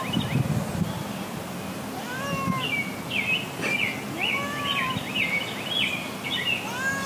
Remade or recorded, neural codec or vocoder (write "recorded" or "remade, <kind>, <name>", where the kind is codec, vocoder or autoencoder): recorded